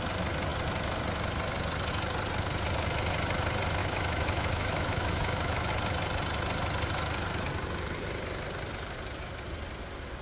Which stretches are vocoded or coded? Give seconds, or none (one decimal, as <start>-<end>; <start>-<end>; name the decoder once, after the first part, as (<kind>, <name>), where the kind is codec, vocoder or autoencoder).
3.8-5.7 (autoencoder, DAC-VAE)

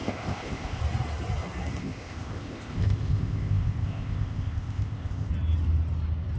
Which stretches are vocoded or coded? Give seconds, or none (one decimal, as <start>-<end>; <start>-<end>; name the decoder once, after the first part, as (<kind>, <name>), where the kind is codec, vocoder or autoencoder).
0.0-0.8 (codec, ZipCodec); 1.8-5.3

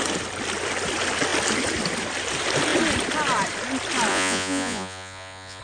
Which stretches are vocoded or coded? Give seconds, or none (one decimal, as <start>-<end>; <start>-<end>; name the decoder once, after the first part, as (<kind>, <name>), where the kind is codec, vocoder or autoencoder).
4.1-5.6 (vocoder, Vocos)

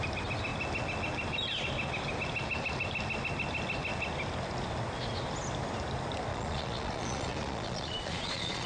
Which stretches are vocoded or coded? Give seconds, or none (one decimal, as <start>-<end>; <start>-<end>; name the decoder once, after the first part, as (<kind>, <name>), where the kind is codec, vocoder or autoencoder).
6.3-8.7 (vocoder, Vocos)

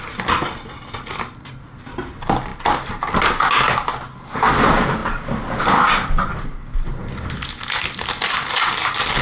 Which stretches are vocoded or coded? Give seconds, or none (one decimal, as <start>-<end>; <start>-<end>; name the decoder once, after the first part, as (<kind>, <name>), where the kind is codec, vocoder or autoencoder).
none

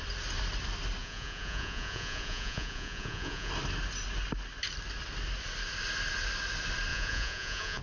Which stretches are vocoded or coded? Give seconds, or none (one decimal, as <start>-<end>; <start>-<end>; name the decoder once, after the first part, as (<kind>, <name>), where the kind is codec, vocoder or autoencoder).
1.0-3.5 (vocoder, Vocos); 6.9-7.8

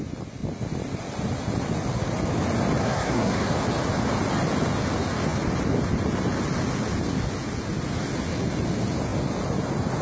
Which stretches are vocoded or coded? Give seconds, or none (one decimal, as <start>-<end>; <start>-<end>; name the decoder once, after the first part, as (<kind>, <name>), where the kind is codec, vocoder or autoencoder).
2.8-3.5 (codec, SNAC)

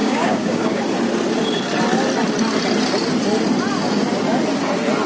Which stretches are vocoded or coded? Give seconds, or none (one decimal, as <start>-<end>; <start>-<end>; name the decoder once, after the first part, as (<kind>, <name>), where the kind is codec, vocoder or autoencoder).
0.0-0.8 (codec, DAC)